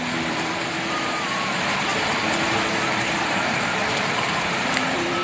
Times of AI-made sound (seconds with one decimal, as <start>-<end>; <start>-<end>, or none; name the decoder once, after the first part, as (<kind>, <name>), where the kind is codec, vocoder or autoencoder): 0.0-5.2 (vocoder, BigVGAN v2)

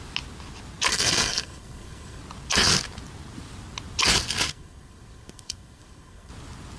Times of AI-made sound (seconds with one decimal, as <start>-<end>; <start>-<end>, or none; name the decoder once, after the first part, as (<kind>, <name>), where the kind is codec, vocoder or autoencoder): 0.9-2.2 (codec, SNAC); 4.5-6.3

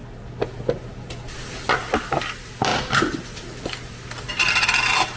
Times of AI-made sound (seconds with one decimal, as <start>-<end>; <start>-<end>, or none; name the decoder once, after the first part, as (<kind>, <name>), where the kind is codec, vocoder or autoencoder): none

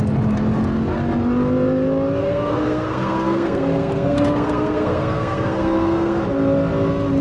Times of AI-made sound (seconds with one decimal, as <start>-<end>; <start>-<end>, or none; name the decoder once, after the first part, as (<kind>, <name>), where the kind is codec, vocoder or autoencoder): 2.2-6.2 (codec, SNAC)

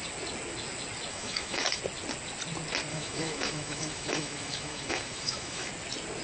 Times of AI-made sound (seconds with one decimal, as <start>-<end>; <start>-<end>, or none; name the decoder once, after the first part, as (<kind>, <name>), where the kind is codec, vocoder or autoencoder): 1.1-1.8 (autoencoder, DAC-VAE); 2.9-5.7

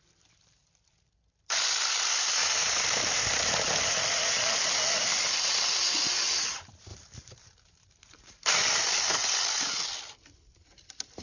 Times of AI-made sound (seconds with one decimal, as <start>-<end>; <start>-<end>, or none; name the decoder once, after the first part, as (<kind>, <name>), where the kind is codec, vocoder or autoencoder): 2.4-3.8 (vocoder, BigVGAN v2); 6.9-8.5

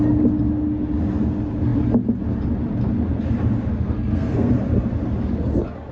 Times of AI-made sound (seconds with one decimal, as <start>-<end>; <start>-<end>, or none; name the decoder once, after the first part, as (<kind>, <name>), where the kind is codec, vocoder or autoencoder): 3.7-4.5 (codec, SNAC)

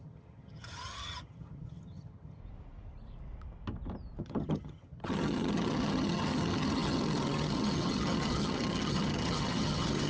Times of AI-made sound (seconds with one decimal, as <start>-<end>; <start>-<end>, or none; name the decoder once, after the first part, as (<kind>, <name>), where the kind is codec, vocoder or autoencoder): 0.0-2.4 (vocoder, HiFi-GAN); 4.2-10.1